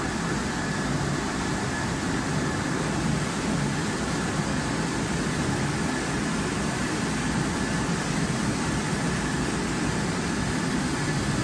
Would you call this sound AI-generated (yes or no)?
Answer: no